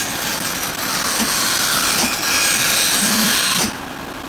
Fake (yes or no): no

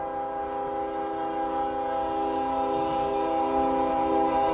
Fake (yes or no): no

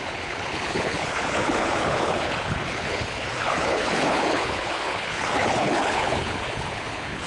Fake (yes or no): yes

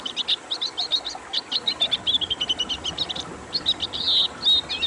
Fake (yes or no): no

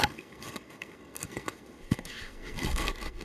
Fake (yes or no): yes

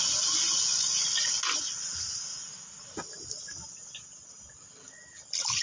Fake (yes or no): no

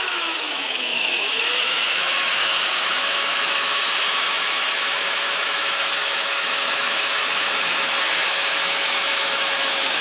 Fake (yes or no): yes